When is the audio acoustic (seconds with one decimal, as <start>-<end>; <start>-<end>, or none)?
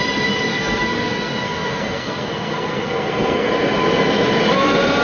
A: 0.0-0.5; 3.5-5.0